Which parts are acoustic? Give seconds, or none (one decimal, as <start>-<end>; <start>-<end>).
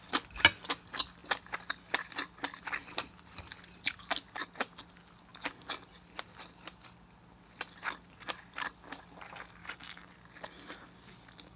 0.0-9.6; 10.1-11.6